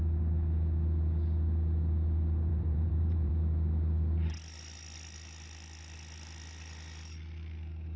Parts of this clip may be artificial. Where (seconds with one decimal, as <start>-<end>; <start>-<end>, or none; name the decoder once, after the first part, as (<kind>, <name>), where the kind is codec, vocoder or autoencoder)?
2.5-3.3 (vocoder, BigVGAN v2)